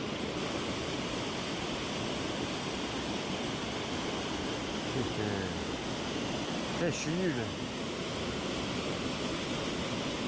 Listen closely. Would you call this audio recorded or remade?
recorded